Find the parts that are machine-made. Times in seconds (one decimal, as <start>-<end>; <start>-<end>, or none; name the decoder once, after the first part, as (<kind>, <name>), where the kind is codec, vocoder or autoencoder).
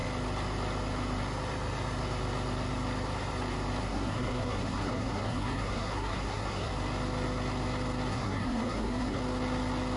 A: 3.8-6.7 (codec, SNAC); 8.1-9.2